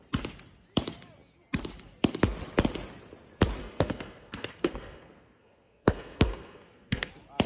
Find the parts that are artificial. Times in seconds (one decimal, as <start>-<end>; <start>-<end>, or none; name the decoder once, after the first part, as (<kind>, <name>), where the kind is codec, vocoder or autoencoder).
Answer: 3.6-7.1 (codec, SNAC)